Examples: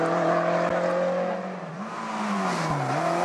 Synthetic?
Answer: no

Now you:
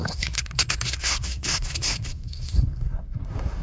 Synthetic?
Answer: yes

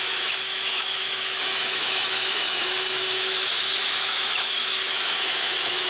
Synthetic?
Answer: yes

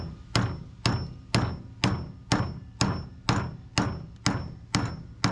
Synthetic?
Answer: no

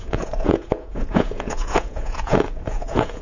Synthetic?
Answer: yes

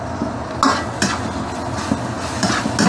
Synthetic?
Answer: no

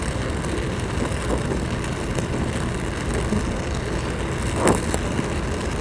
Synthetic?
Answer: no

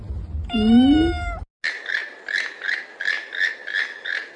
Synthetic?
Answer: no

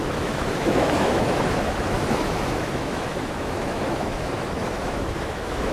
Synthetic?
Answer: yes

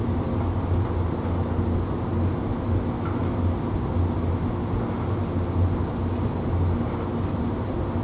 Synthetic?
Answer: no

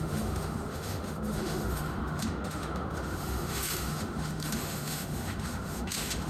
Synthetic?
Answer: yes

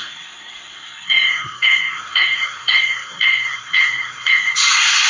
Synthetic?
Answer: yes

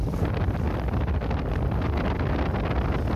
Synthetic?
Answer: no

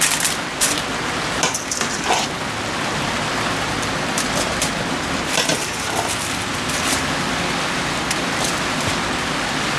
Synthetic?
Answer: no